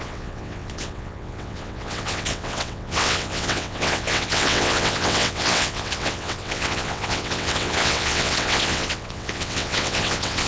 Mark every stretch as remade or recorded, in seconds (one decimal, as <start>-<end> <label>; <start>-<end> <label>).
0.0-10.5 remade